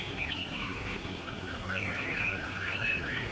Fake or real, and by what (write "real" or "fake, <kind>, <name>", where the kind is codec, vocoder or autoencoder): fake, codec, SNAC